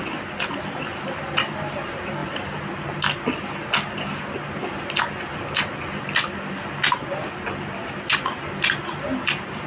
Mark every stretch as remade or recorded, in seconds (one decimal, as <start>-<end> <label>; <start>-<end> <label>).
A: 0.0-9.7 recorded